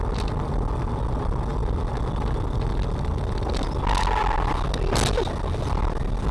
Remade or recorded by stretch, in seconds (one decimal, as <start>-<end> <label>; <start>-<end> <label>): 0.0-6.3 recorded